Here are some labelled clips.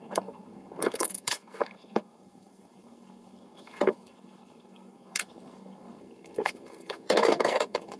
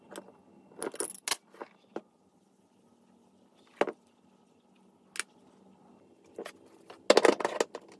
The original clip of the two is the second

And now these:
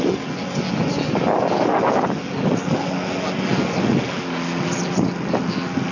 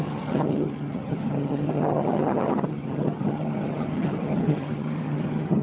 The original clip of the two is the first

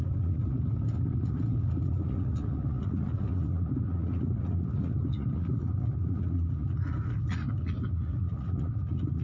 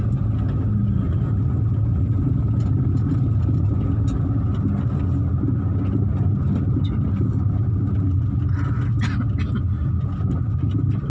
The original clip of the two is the second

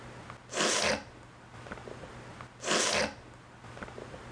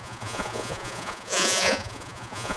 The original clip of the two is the first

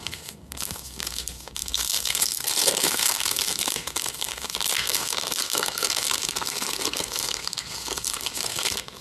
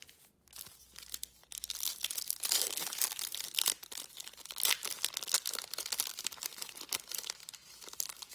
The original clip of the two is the second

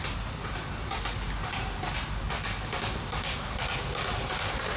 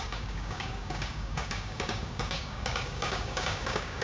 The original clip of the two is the first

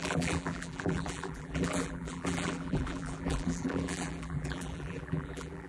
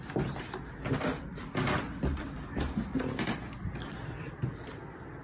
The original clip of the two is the second